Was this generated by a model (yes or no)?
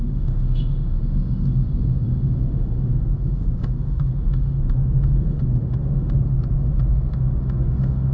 yes